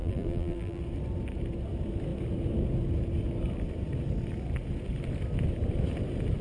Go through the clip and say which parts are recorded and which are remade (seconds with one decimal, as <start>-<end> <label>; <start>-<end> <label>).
0.0-0.8 remade; 0.8-6.4 recorded